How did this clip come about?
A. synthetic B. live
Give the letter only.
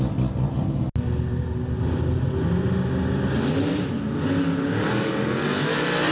B